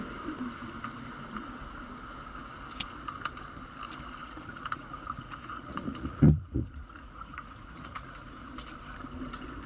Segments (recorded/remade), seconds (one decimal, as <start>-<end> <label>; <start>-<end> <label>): 0.0-4.2 recorded; 4.2-8.5 remade; 8.5-9.7 recorded